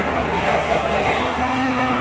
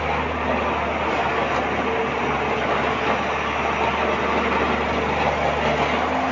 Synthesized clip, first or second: first